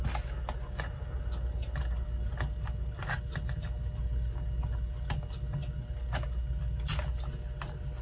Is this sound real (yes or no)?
yes